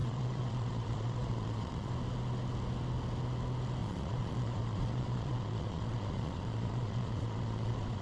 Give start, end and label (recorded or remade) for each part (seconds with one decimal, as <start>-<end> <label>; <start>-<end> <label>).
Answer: 0.0-1.9 remade; 1.9-3.8 recorded; 3.8-8.0 remade